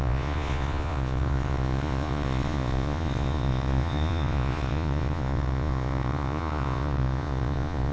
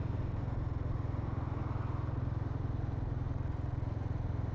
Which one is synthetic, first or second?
first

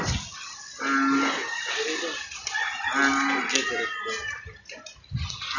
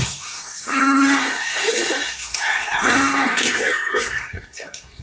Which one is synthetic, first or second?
second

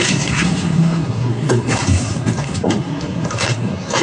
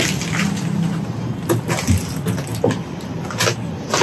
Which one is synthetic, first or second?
first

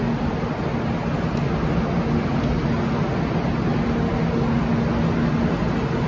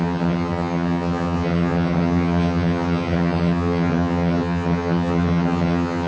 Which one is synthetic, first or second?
second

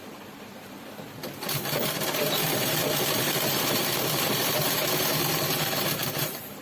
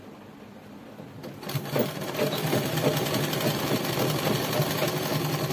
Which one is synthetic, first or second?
first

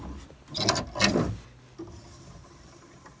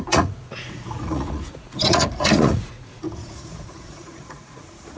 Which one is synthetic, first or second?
second